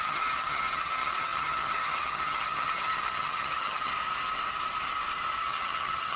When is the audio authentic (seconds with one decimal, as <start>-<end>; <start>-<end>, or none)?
3.9-5.4